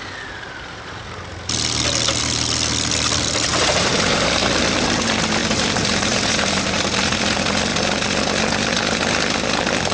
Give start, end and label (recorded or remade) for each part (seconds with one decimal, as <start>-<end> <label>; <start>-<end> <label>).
0.0-3.5 recorded; 3.5-4.6 remade; 4.6-5.4 recorded; 5.4-7.2 remade; 7.2-9.9 recorded